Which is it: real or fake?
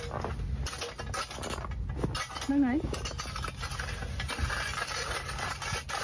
real